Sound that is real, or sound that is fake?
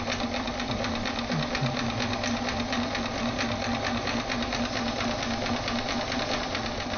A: real